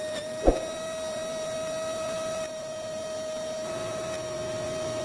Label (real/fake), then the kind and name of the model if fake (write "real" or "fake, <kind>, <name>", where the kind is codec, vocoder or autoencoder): real